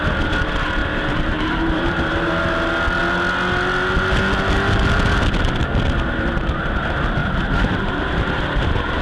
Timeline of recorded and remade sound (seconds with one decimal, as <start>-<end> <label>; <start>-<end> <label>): 0.0-0.8 recorded; 0.8-2.1 remade; 2.1-7.2 recorded; 7.2-9.0 remade